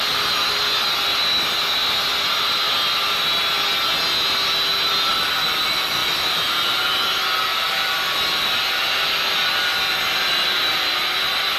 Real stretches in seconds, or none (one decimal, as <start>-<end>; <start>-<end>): 0.0-6.0; 6.8-7.5